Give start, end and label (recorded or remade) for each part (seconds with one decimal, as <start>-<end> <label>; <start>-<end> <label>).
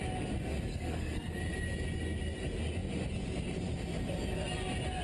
0.0-0.7 recorded; 0.7-1.3 remade; 1.3-5.0 recorded